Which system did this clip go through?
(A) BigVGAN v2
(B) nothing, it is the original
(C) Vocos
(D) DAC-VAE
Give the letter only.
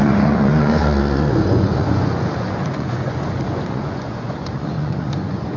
C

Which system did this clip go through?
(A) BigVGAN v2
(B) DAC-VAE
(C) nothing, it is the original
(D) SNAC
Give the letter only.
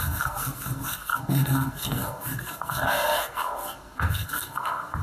D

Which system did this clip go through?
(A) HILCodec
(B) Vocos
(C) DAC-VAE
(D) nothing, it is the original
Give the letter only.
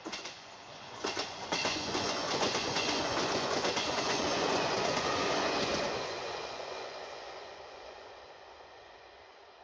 B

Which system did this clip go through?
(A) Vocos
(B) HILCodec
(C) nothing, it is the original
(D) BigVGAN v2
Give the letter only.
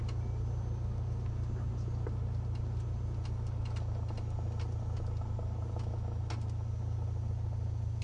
C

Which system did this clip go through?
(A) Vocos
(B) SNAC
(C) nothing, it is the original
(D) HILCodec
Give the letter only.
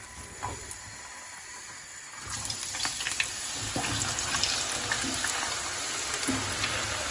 C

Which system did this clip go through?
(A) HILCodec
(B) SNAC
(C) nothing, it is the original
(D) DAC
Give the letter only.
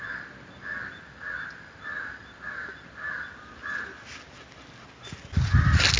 C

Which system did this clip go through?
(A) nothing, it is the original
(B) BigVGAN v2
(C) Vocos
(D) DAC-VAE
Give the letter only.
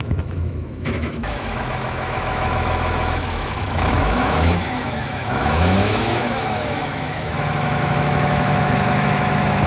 D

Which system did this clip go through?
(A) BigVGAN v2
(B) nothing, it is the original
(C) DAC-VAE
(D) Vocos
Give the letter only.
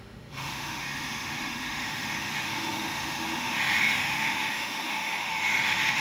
C